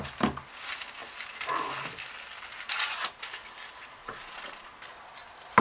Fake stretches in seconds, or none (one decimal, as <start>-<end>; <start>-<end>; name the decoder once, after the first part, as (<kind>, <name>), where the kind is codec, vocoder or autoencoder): 4.0-4.7 (vocoder, Vocos)

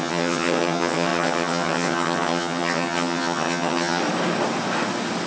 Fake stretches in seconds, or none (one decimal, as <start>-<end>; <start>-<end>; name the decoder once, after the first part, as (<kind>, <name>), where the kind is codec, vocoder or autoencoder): 0.0-4.0 (vocoder, HiFi-GAN)